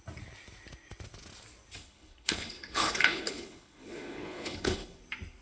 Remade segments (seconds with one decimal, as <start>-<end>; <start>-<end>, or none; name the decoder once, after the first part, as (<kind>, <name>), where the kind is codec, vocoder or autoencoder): 1.8-5.0 (codec, HILCodec)